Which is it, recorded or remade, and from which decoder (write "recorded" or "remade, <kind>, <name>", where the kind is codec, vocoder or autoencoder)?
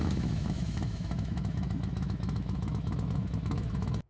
remade, autoencoder, DAC-VAE